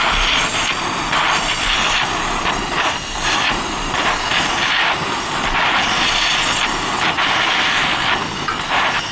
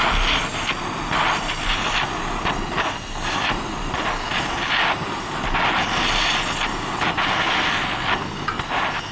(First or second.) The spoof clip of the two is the first